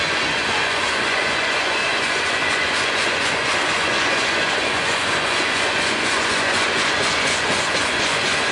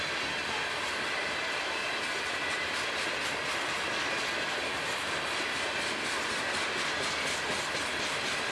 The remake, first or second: first